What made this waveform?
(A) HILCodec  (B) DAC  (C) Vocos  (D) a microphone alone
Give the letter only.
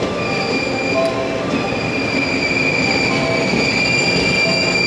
D